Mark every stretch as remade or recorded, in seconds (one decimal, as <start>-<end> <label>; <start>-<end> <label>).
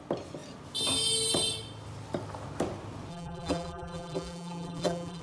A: 0.0-3.1 recorded; 3.1-5.2 remade